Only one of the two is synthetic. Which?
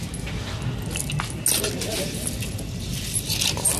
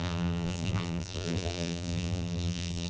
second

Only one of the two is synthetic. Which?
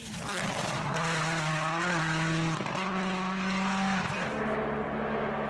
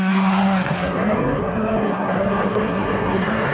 second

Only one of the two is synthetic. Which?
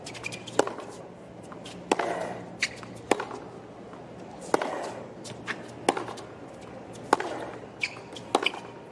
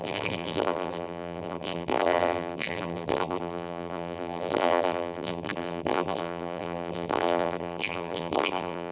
second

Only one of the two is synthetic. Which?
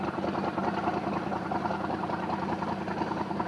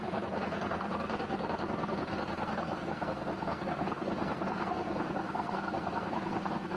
second